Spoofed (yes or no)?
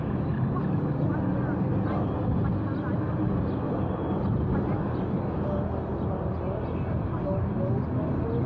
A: no